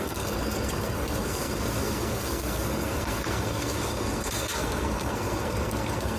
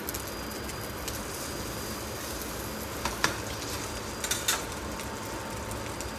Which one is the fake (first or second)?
first